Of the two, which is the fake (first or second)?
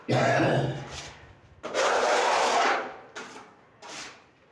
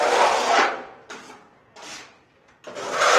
first